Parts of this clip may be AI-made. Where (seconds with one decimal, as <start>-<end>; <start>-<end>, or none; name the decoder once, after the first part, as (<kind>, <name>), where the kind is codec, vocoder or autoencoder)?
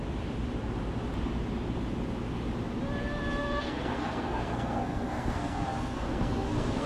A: 3.4-6.9 (codec, SNAC)